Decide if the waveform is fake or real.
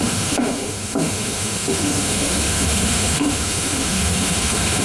fake